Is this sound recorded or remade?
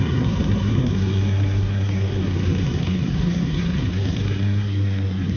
remade